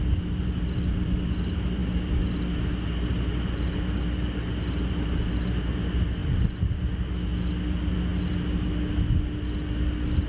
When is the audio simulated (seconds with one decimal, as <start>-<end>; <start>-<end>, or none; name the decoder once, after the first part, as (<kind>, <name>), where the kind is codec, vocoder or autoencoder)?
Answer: none